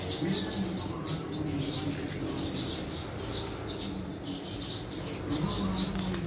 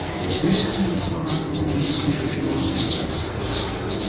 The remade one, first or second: second